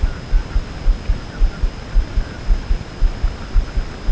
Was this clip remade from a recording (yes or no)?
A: no